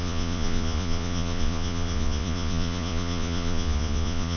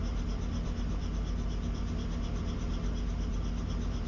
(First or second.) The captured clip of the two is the second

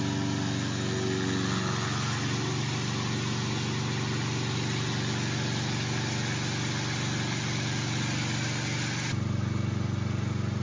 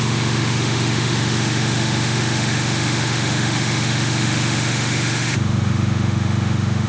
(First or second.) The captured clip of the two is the first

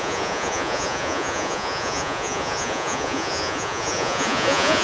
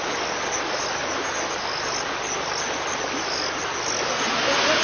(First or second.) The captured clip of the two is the second